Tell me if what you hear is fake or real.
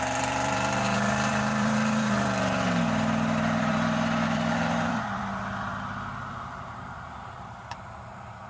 fake